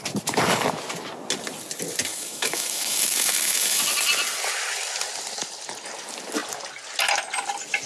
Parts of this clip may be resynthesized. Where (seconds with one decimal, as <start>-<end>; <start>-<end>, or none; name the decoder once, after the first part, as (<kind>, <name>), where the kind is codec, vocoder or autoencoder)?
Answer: 2.1-3.8 (autoencoder, DAC-VAE)